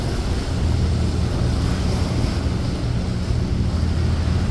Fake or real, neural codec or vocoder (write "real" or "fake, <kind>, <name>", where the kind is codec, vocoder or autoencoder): real